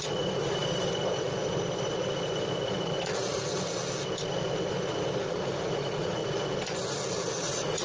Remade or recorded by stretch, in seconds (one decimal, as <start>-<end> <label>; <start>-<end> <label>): 0.0-0.6 remade; 0.6-5.3 recorded; 5.3-6.2 remade; 6.2-7.3 recorded; 7.3-7.8 remade